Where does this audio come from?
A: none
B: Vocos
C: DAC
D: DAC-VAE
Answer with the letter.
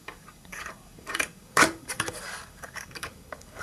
C